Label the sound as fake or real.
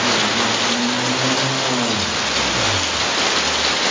real